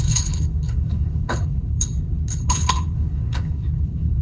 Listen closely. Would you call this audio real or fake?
fake